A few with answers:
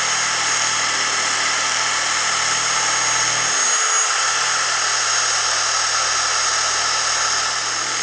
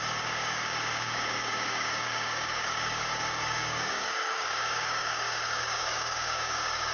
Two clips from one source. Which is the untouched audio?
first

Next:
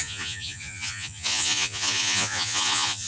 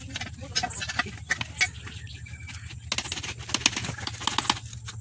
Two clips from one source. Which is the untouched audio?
second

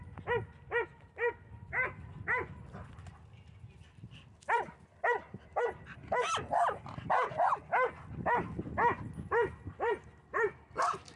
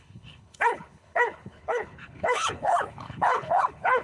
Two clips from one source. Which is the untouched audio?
first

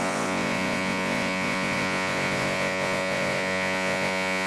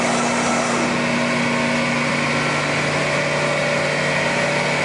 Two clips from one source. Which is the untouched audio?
second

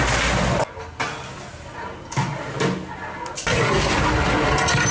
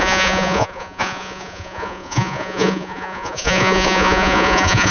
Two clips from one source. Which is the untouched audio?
first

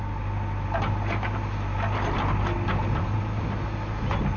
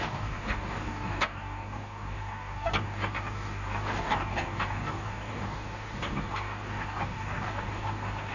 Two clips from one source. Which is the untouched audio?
first